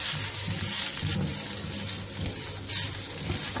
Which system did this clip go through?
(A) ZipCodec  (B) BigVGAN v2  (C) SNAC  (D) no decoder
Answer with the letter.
D